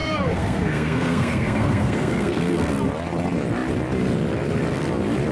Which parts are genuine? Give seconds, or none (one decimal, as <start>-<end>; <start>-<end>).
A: 2.7-5.3